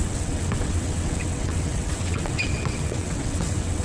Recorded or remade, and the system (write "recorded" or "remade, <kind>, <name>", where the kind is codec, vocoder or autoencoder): remade, vocoder, WaveNeXt